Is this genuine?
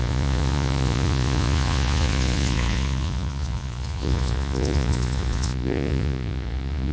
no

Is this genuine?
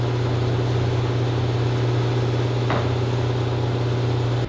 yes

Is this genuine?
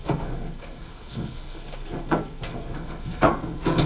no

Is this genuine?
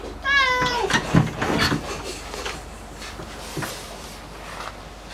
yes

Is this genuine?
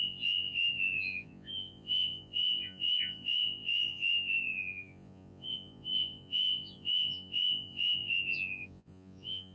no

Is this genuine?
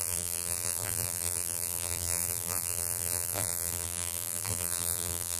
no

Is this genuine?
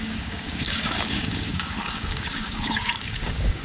no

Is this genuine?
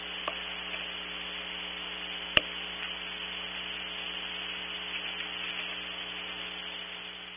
yes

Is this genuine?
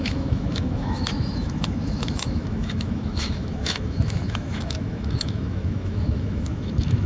no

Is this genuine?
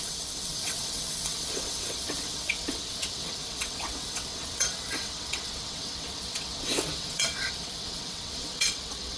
no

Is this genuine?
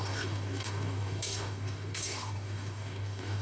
no